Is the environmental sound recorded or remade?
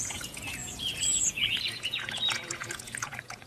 remade